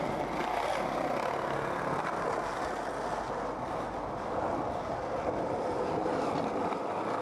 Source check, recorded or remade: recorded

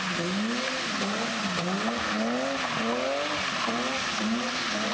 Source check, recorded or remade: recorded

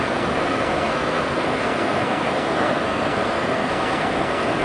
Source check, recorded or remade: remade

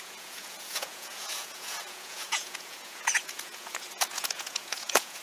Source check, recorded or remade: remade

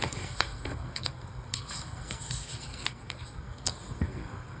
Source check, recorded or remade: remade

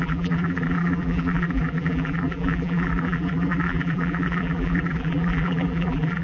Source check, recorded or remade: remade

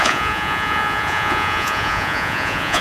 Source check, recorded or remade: remade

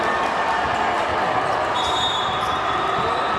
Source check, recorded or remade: recorded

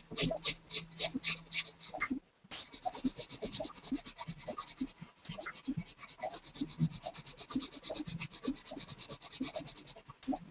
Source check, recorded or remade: recorded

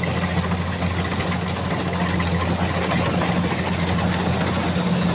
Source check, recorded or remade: recorded